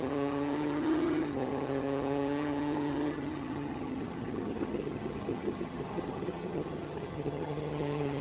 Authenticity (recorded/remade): remade